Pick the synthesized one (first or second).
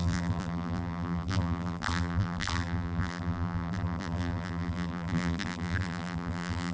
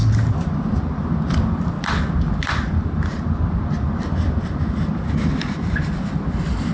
first